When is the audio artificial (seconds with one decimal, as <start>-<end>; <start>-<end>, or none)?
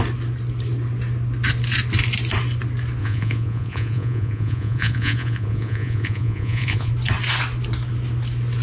3.0-6.9